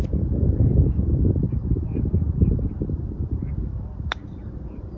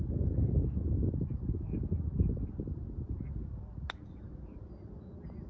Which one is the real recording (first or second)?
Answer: second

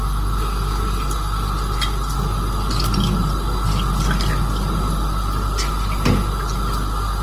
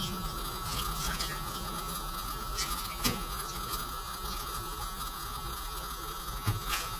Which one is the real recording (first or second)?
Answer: first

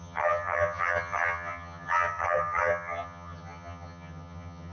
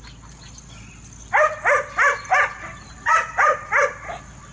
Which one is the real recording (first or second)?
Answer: second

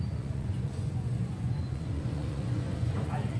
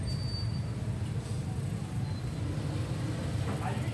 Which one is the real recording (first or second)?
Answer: second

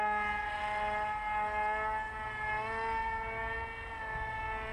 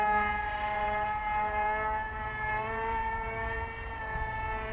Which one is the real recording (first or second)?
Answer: first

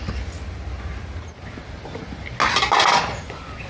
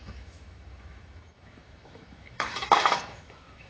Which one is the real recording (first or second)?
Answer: first